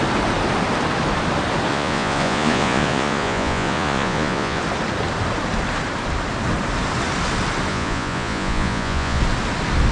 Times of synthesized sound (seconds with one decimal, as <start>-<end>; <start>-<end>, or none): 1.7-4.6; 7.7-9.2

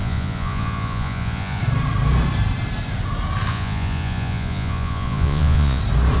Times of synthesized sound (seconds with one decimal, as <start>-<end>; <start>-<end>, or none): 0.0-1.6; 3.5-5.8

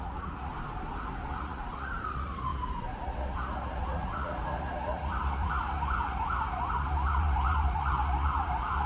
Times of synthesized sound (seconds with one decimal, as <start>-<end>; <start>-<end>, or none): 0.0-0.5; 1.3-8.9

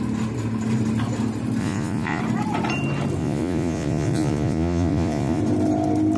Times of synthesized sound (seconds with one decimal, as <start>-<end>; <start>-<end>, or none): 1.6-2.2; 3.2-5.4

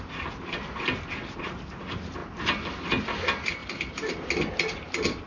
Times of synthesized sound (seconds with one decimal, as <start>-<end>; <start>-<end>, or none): none

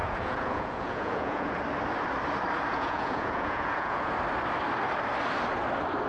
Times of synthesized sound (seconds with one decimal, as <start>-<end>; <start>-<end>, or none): 0.0-1.5; 2.7-4.1

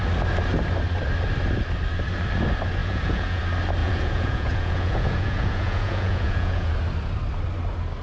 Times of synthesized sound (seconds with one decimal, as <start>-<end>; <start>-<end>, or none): 2.8-3.4; 3.8-6.7

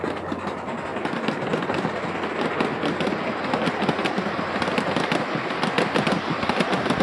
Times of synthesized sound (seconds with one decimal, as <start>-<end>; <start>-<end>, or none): none